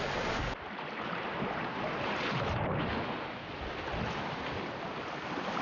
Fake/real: real